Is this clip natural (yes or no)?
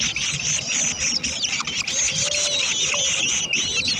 yes